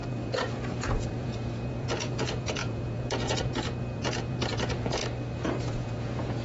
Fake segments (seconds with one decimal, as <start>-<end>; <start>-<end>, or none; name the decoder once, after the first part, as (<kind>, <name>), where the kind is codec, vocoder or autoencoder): 0.0-5.0 (vocoder, Vocos); 5.6-6.4